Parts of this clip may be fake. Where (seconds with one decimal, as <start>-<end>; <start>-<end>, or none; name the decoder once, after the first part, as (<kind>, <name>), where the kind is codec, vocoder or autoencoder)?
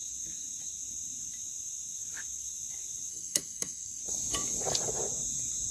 3.1-4.0 (codec, SNAC)